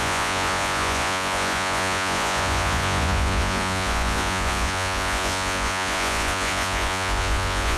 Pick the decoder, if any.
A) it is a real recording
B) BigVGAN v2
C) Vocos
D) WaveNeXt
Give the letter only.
C